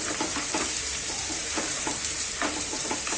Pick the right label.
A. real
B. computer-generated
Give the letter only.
B